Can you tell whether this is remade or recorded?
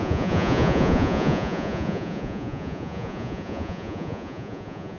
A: remade